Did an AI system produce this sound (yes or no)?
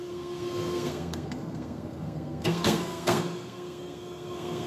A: yes